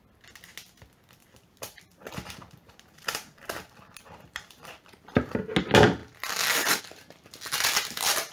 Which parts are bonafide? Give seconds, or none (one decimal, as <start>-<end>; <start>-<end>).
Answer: 0.0-1.2; 5.3-8.3